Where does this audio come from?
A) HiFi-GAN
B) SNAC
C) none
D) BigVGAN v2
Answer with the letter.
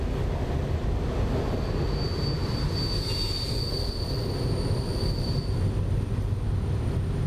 C